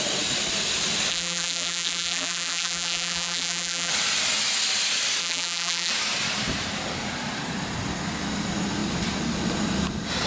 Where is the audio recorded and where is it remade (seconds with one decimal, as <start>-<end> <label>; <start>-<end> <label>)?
0.0-1.1 recorded; 1.1-3.9 remade; 3.9-5.2 recorded; 5.2-5.9 remade; 5.9-10.3 recorded